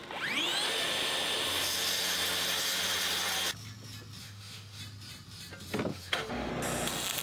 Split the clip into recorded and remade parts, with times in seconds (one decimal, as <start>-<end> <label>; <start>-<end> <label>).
0.0-4.2 recorded; 4.2-4.8 remade; 4.8-5.9 recorded; 5.9-6.5 remade; 6.5-7.2 recorded